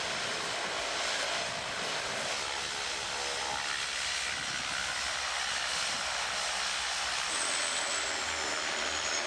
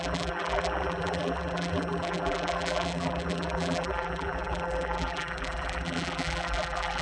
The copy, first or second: second